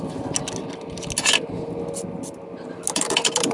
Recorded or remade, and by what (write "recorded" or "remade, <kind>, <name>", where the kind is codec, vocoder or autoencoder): recorded